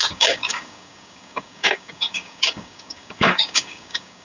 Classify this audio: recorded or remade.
remade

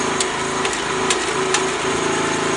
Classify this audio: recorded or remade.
recorded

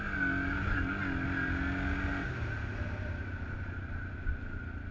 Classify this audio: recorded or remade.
recorded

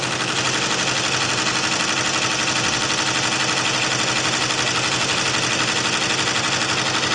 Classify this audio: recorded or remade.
recorded